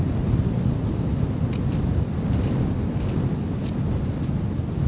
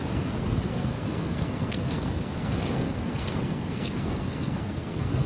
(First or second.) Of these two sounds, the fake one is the second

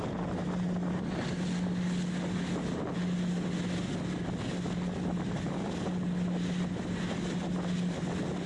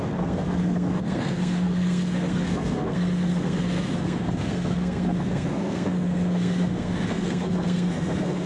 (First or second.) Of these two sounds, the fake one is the second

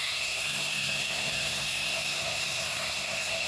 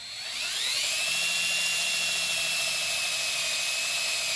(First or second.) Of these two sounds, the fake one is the first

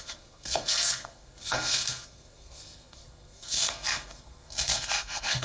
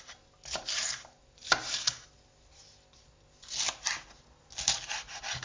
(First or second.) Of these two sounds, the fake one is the first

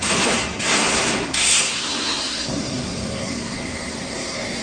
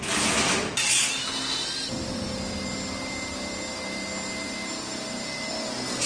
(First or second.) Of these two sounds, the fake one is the first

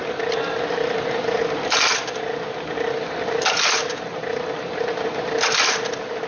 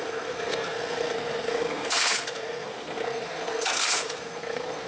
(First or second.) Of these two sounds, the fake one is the second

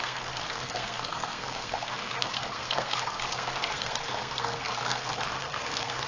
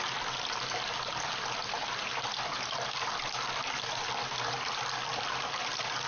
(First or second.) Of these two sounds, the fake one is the first